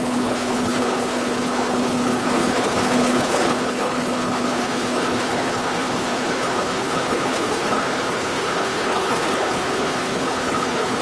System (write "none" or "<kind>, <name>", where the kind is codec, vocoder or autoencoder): codec, HILCodec